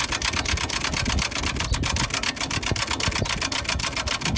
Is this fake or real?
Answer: real